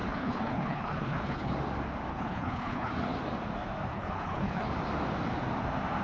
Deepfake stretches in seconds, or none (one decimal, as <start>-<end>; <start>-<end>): 0.0-1.5; 2.1-2.9; 3.9-4.7